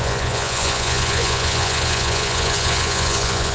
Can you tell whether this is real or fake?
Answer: fake